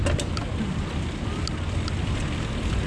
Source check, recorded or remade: recorded